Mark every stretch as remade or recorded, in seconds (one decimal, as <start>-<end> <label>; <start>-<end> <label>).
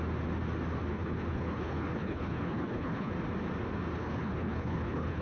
0.0-0.9 recorded; 0.9-3.1 remade; 3.1-4.0 recorded; 4.0-5.2 remade